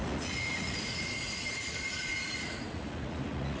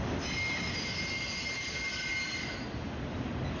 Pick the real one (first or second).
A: second